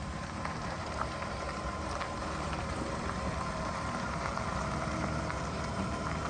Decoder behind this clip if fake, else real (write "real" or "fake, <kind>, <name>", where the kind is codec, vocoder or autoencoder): fake, vocoder, BigVGAN v2